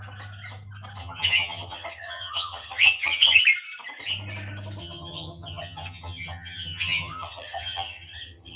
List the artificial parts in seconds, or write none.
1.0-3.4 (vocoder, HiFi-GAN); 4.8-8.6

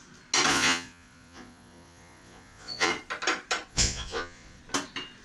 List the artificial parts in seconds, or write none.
0.5-2.9 (vocoder, Vocos); 3.7-4.6

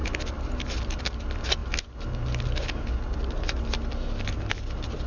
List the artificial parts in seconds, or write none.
none

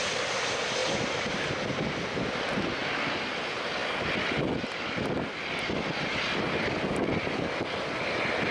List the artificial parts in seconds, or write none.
0.8-1.5 (vocoder, BigVGAN v2)

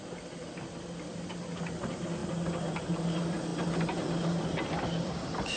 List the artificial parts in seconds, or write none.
none

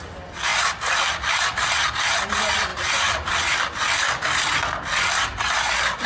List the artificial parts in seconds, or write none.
2.7-3.3 (vocoder, BigVGAN v2); 5.3-6.1